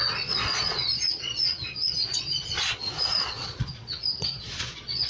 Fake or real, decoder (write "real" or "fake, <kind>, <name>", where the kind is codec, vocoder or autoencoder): fake, vocoder, Vocos